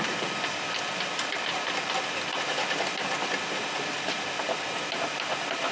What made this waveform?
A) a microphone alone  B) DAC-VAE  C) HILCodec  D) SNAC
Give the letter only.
A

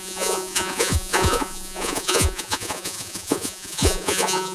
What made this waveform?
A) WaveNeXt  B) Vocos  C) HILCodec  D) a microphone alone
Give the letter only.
B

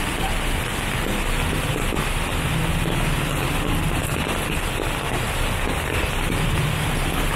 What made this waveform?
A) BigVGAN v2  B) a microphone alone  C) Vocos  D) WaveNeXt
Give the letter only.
B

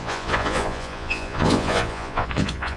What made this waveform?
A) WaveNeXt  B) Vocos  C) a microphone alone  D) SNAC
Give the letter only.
B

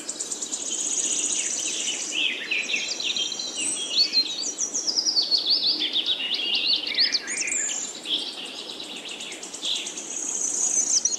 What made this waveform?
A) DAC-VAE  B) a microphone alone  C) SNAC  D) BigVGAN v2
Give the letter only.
B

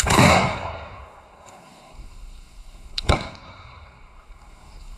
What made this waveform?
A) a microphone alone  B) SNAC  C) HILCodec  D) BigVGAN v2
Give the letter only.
B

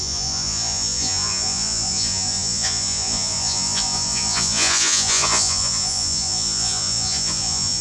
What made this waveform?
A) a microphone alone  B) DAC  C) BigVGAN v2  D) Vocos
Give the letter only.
D